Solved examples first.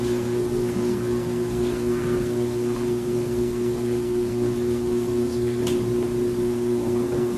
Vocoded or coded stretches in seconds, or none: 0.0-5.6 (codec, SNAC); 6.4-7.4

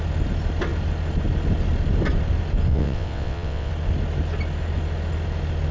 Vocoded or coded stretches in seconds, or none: 2.7-3.7 (vocoder, WaveNeXt)

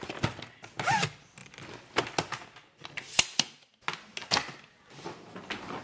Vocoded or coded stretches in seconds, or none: none